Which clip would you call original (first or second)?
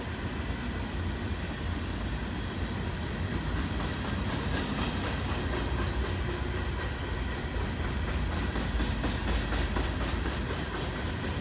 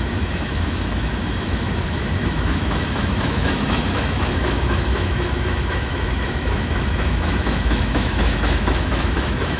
first